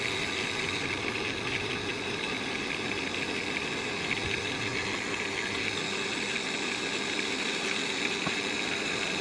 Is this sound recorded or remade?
recorded